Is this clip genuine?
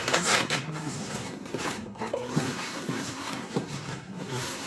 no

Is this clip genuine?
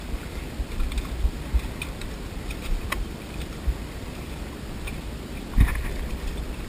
no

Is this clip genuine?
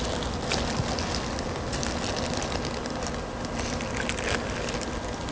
yes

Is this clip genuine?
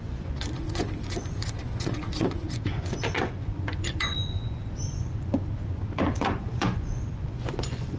no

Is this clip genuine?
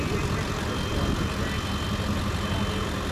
yes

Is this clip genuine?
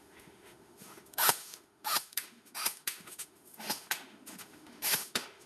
no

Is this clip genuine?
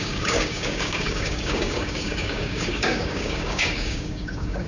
no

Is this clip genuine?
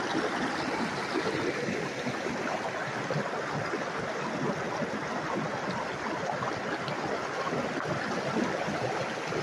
yes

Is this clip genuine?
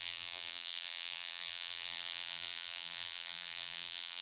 no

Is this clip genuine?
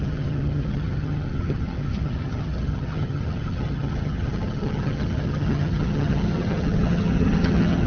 no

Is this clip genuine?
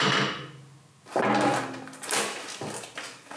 yes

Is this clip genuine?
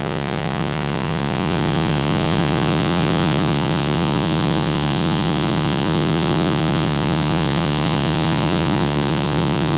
no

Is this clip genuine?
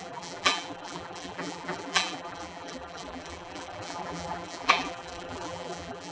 no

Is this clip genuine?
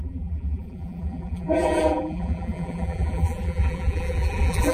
no